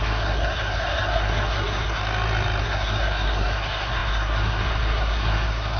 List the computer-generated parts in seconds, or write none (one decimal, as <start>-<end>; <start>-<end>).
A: 0.0-2.0; 2.6-5.8